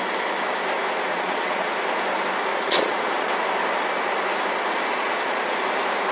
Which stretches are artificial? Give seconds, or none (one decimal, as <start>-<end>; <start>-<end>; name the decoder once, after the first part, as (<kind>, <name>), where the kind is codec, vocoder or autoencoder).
1.1-1.7 (vocoder, Vocos); 2.5-3.3; 4.9-5.6